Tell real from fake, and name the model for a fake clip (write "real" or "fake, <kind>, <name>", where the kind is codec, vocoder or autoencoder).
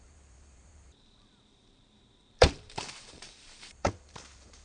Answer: fake, vocoder, BigVGAN v2